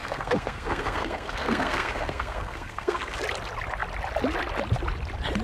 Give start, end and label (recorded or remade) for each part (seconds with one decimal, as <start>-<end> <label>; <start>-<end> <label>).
0.0-3.2 remade; 3.2-5.4 recorded